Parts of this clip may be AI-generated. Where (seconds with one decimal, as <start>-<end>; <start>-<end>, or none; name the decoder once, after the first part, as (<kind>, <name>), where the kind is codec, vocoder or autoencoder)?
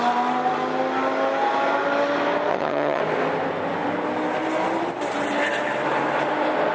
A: 2.5-3.0 (vocoder, HiFi-GAN)